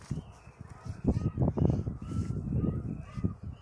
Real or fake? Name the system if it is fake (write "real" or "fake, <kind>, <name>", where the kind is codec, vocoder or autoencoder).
real